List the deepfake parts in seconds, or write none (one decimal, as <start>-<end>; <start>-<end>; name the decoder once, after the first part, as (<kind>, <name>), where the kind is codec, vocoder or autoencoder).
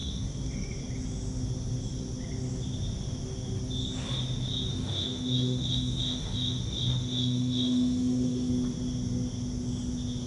0.0-0.8 (autoencoder, DAC-VAE); 4.7-8.5